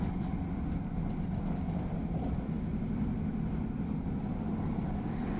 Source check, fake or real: real